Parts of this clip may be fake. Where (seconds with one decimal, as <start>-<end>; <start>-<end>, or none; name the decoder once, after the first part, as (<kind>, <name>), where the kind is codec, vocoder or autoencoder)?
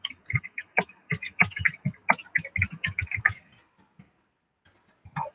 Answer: 0.0-2.0 (codec, DAC); 2.7-3.5